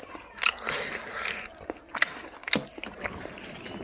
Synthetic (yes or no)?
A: no